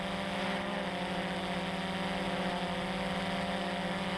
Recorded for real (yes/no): yes